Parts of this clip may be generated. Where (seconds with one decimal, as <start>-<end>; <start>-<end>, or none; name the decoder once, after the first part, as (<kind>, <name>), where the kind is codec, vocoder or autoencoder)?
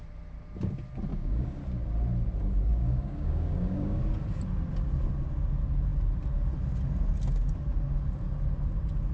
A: 1.1-1.6 (codec, DAC); 2.7-4.0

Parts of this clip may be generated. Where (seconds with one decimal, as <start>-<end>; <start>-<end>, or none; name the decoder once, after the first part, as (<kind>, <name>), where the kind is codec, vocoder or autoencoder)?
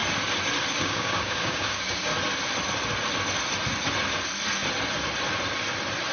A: 0.7-2.1 (codec, DAC)